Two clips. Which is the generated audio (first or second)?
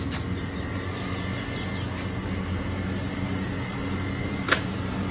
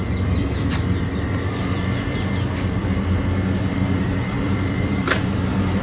second